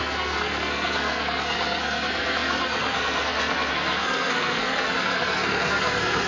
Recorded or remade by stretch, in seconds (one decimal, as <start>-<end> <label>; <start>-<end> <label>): 0.0-6.3 remade